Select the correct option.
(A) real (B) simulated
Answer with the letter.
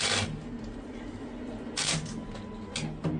A